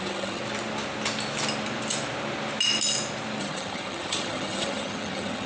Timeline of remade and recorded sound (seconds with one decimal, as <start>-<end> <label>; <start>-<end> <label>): 0.0-0.4 remade; 0.4-3.4 recorded; 3.4-5.5 remade